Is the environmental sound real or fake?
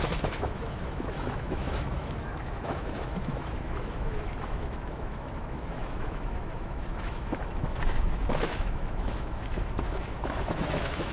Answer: fake